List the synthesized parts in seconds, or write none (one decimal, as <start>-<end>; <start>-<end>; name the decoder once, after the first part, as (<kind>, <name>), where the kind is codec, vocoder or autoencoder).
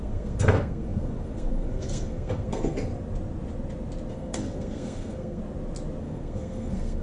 0.0-2.9 (codec, SNAC); 4.1-5.4; 6.0-7.0